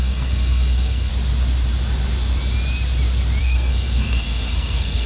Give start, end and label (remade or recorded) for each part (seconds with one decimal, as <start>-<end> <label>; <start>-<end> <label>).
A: 0.0-1.1 remade; 1.1-3.4 recorded; 3.4-5.1 remade